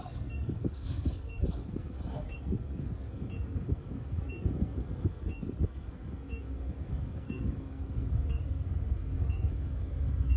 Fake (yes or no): yes